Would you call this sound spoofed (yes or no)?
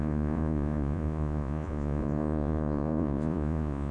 yes